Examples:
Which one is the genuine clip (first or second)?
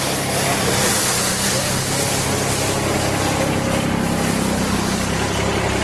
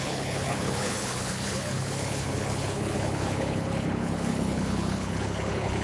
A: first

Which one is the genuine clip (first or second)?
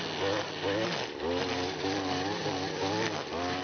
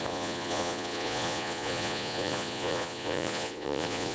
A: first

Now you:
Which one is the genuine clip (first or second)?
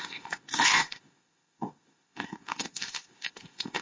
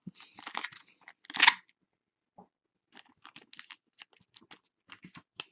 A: second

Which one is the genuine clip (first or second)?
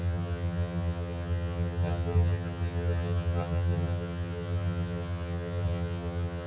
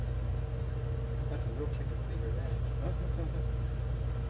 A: second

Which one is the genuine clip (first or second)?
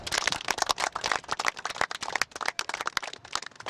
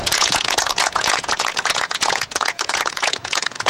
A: first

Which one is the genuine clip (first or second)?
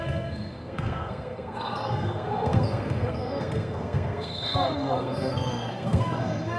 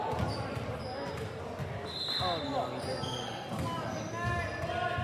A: second